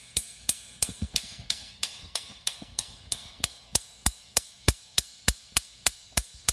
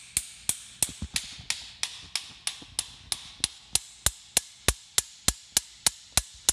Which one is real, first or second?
second